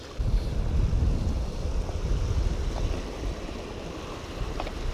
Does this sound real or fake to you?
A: real